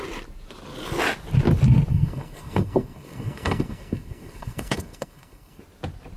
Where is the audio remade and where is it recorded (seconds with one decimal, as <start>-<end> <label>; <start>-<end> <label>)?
0.0-1.9 recorded; 1.9-5.6 remade; 5.6-6.2 recorded